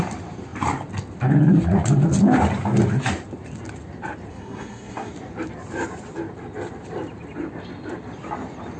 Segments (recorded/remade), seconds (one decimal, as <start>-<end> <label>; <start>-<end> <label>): 0.0-4.3 recorded; 4.3-5.1 remade; 5.1-8.8 recorded